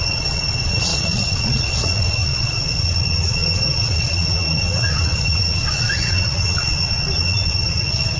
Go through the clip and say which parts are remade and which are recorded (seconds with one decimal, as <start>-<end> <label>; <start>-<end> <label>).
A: 0.0-8.2 remade